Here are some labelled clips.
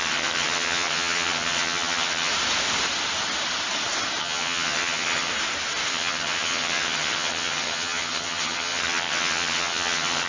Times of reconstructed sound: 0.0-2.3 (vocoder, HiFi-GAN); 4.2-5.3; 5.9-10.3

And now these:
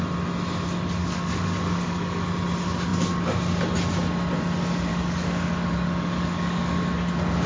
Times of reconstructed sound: 1.0-2.3 (codec, DAC); 4.9-6.9